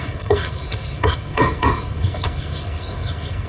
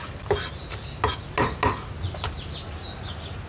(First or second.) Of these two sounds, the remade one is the first